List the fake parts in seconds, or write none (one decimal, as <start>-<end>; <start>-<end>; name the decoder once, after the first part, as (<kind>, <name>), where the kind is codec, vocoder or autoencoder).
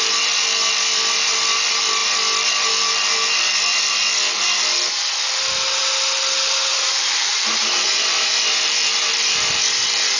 6.7-8.3 (vocoder, BigVGAN v2)